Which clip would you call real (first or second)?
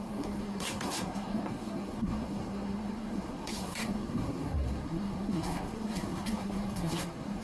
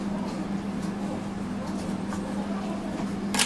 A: second